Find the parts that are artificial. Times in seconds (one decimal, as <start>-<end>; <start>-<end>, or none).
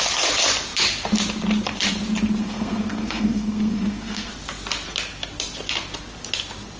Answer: 2.4-4.3